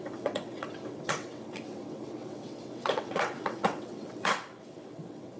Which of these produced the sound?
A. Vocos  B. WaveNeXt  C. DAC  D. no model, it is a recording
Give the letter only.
B